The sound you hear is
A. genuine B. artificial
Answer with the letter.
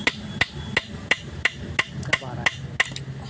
A